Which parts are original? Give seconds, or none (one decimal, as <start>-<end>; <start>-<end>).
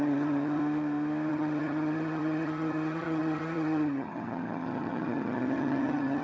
0.6-1.3